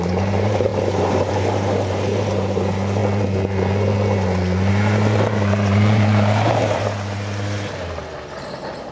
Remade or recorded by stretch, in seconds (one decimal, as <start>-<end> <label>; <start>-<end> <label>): 0.0-3.0 remade; 3.0-4.7 recorded; 4.7-8.9 remade